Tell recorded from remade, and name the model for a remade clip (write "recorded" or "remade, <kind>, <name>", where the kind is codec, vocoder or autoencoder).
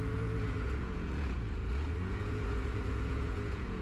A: remade, vocoder, Vocos